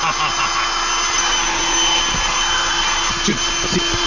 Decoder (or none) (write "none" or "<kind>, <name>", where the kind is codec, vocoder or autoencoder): none